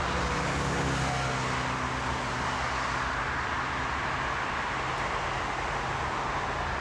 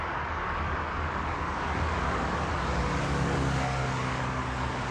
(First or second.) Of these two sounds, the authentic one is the first